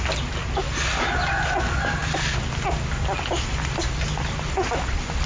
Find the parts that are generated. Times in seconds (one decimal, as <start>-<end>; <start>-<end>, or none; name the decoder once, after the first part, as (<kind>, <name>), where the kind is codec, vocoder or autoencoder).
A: none